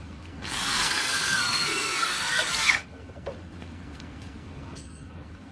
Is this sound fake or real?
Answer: fake